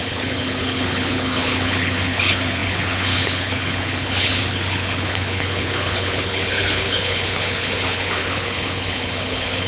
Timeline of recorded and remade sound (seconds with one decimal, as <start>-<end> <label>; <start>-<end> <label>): 0.0-9.7 remade